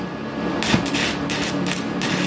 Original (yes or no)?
yes